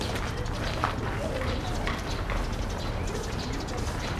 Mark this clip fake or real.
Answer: real